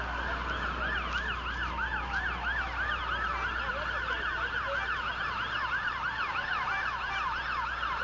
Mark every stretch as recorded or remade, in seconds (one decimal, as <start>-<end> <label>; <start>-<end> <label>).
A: 0.0-8.0 recorded